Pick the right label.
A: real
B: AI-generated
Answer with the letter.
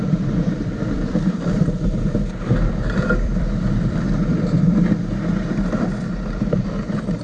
B